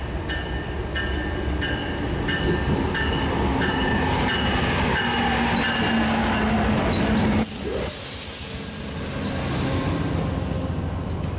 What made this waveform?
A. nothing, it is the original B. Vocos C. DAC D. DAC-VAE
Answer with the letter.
A